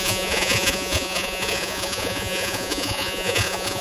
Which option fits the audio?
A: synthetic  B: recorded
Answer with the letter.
A